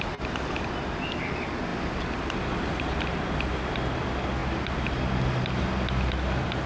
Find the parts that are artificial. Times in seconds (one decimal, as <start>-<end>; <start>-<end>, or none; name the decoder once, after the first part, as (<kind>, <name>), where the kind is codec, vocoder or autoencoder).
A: none